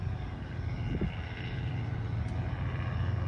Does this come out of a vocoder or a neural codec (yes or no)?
no